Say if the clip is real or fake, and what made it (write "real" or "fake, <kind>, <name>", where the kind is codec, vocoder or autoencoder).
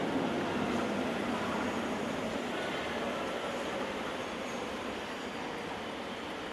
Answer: real